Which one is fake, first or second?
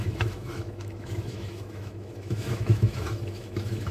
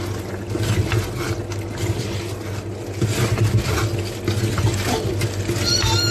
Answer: first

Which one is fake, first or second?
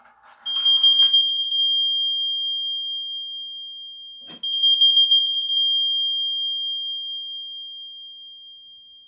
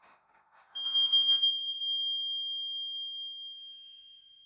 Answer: second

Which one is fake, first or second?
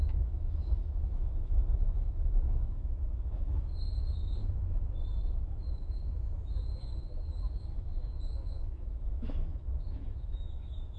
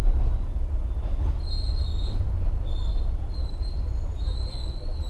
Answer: first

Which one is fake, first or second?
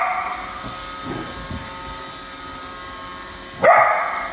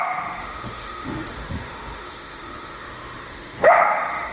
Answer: second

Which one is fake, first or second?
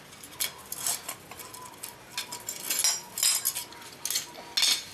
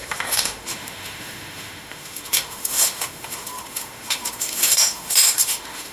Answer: second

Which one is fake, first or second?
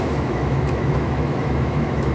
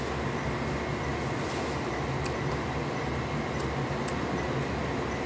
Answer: first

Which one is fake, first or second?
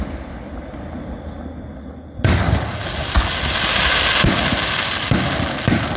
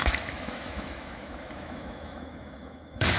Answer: second